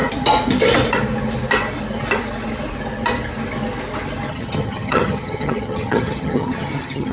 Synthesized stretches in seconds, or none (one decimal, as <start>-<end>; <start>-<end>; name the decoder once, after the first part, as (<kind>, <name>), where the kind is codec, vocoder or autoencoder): 4.3-7.1 (vocoder, HiFi-GAN)